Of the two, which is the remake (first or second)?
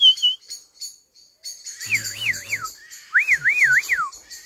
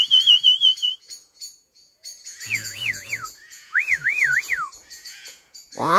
second